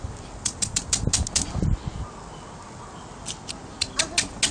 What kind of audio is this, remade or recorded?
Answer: recorded